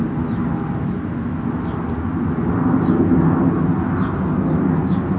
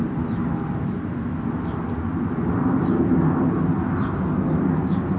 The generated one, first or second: second